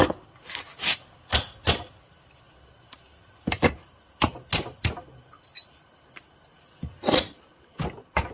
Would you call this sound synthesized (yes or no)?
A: no